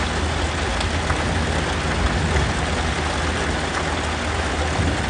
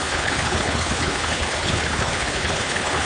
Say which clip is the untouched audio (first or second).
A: first